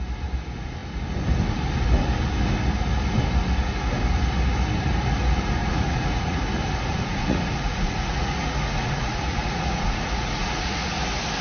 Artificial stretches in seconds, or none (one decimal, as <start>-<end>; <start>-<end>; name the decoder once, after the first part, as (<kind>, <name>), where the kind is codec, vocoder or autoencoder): 5.6-6.4 (vocoder, Vocos); 6.9-11.0